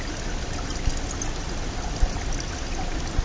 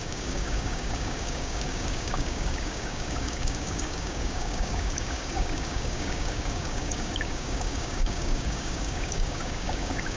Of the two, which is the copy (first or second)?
second